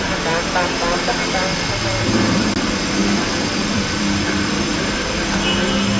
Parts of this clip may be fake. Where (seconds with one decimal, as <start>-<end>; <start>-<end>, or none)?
3.0-4.5